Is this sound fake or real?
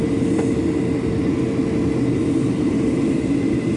real